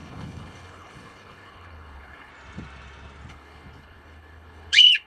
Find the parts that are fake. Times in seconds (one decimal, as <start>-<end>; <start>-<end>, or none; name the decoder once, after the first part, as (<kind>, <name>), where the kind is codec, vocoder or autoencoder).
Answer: 0.0-2.3 (codec, HILCodec); 3.3-5.1